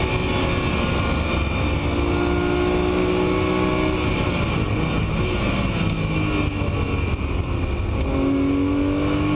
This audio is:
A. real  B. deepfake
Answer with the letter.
A